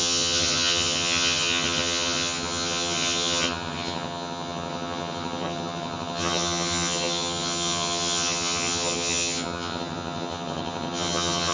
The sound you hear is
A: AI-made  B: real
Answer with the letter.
A